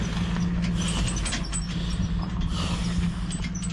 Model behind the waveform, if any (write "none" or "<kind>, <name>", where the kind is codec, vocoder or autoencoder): none